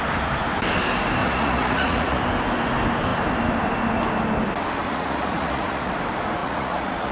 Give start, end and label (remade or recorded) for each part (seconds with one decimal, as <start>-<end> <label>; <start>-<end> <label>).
0.0-1.2 recorded; 1.2-2.2 remade; 2.2-4.8 recorded; 4.8-5.9 remade; 5.9-6.4 recorded; 6.4-7.1 remade